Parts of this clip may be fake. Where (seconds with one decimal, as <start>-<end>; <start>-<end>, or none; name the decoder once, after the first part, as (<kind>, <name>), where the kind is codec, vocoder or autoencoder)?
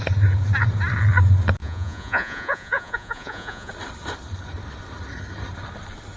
1.6-3.7 (vocoder, Vocos)